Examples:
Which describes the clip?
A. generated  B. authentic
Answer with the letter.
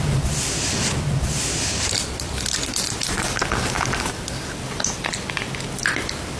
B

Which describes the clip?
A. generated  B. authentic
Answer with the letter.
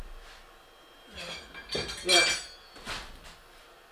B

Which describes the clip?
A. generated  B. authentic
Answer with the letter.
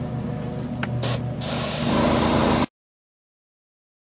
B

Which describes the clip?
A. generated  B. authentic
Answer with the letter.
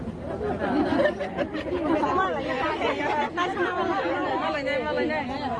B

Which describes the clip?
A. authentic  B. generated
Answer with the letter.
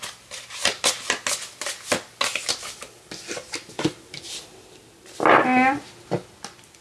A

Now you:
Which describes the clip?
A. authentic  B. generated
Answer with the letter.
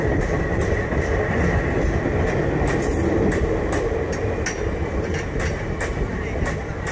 A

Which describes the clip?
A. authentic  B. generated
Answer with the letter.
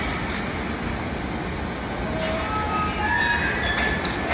A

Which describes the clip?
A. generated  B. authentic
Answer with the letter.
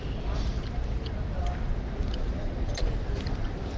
B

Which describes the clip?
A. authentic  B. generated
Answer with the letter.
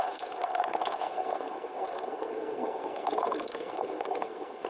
B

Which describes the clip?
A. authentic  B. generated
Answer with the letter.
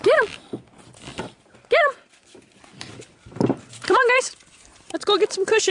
B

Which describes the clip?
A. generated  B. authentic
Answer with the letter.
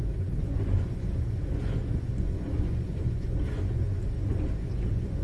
A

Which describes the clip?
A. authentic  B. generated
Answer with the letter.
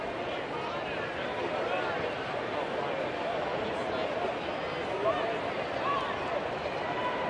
A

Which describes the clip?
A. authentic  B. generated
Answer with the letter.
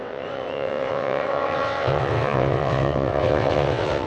B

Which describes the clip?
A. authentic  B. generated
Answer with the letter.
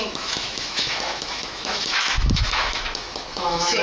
B